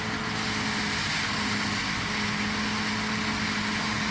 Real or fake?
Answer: real